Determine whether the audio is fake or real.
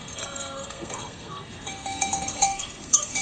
fake